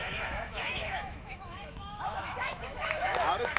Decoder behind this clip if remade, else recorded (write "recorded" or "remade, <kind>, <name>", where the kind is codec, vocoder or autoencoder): remade, autoencoder, DAC-VAE